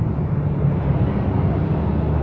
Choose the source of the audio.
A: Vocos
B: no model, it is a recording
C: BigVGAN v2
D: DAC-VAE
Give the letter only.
B